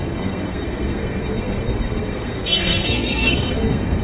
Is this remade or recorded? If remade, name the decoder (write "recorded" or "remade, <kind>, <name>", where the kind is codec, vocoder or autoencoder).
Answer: remade, codec, SNAC